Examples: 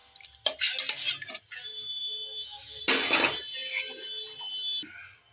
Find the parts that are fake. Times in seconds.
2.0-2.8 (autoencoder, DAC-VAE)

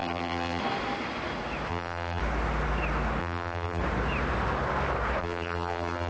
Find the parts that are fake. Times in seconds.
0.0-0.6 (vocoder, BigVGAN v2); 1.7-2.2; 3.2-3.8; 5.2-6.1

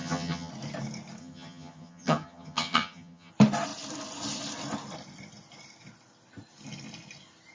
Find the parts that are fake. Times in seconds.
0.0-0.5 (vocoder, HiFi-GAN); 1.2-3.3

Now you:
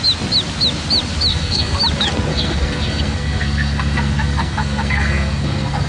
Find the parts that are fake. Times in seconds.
1.3-1.8 (codec, SNAC); 2.3-5.9

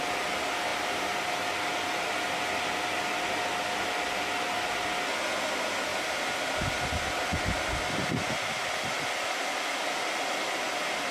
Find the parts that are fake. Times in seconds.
5.9-6.5 (vocoder, BigVGAN v2)